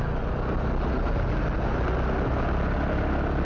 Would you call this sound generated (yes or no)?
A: no